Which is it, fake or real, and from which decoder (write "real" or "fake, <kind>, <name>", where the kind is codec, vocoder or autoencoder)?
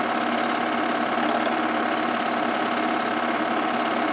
real